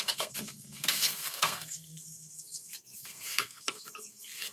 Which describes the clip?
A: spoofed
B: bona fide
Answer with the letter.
A